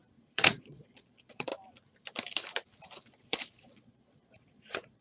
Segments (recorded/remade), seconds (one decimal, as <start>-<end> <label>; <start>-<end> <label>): 0.0-1.5 remade; 1.5-3.1 recorded; 3.1-5.0 remade